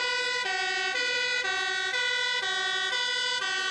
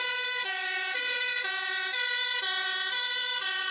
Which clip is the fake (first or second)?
second